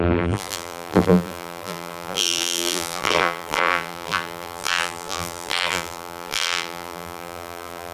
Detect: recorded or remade remade